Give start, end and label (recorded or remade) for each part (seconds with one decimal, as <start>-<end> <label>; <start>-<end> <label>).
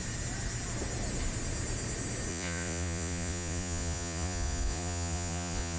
0.0-2.3 recorded; 2.3-5.8 remade